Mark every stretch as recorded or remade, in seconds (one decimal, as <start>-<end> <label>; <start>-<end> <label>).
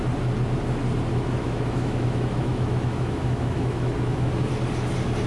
0.0-1.1 recorded; 1.1-4.3 remade; 4.3-5.3 recorded